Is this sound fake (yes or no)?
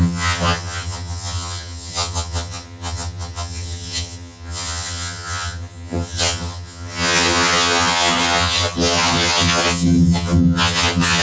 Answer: yes